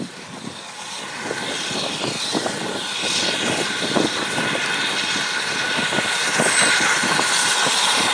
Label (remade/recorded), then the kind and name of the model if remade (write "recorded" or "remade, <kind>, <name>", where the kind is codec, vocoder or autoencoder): recorded